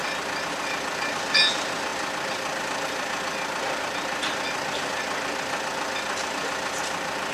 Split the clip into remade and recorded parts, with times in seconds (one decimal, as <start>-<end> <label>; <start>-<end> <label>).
0.0-7.3 recorded

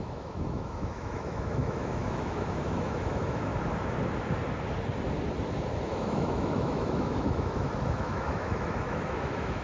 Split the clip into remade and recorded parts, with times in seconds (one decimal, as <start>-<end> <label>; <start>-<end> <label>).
0.0-3.5 remade; 3.5-5.8 recorded; 5.8-9.6 remade